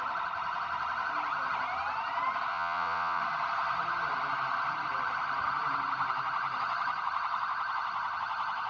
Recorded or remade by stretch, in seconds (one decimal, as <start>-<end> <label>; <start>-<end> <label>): 0.0-2.5 recorded; 2.5-3.2 remade; 3.2-8.7 recorded